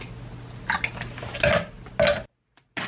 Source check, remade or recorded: recorded